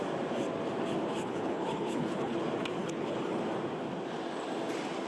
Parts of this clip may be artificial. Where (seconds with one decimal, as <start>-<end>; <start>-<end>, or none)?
1.1-2.4; 2.8-3.4